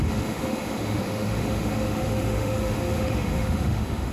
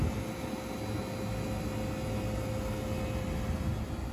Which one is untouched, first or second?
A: second